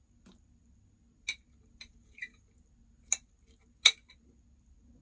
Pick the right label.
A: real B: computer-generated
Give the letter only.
A